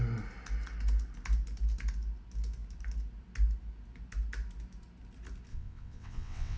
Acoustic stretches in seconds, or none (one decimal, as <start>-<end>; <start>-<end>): 0.0-5.5